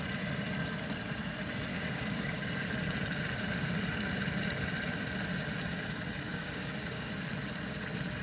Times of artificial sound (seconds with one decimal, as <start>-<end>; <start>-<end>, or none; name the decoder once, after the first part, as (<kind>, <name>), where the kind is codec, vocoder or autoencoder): 1.7-2.5 (codec, DAC); 6.3-7.1